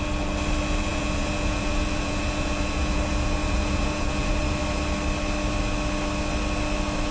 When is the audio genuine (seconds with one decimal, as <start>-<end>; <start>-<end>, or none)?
0.0-0.9; 4.4-7.1